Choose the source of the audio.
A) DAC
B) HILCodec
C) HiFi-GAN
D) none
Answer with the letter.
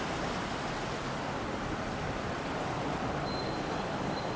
D